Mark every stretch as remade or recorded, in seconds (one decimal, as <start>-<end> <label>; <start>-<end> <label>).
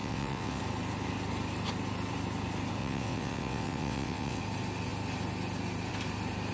0.0-0.6 remade; 0.6-2.8 recorded; 2.8-4.4 remade; 4.4-6.5 recorded